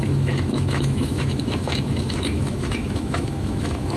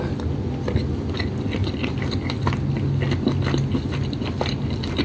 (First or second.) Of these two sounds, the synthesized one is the first